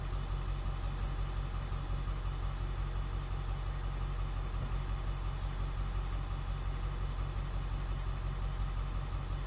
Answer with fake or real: real